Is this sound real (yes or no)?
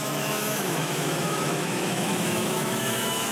no